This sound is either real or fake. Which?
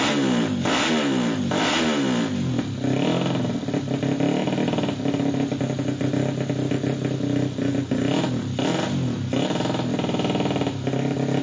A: real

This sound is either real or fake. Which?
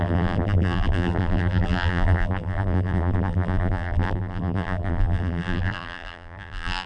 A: fake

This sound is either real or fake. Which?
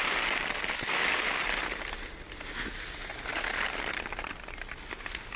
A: real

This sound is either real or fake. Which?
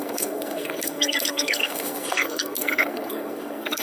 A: fake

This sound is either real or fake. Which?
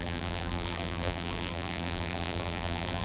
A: fake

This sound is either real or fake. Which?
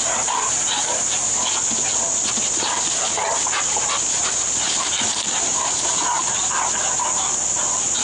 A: real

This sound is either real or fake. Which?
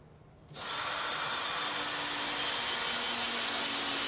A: real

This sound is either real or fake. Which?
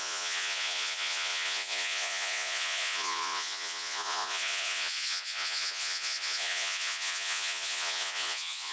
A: fake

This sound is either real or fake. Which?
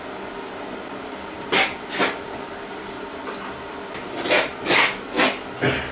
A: real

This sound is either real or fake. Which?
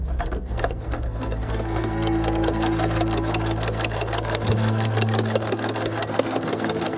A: fake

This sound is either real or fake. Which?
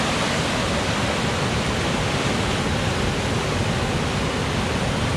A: real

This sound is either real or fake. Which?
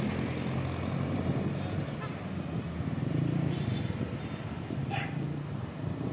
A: real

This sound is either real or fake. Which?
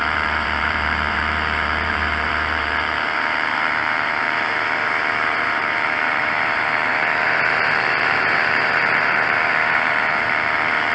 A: fake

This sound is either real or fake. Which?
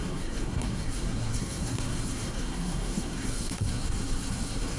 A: fake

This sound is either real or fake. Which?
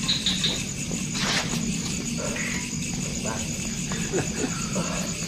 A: real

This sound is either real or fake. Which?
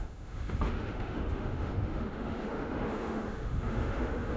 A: fake